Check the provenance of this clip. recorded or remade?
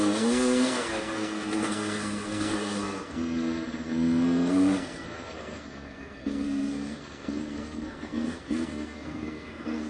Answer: remade